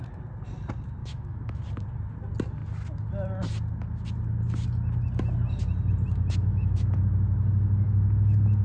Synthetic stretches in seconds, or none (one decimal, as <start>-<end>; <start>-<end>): 1.0-1.6; 6.5-7.0